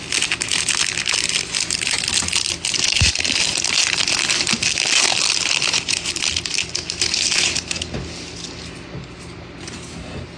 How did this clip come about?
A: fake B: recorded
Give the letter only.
B